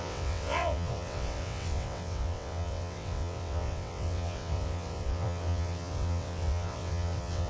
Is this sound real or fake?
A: fake